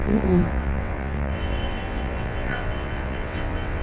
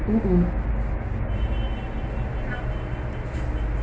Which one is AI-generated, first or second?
first